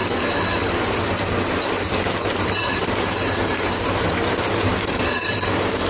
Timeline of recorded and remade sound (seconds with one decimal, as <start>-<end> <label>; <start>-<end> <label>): 0.0-1.4 recorded; 1.4-4.7 remade; 4.7-5.3 recorded; 5.3-5.9 remade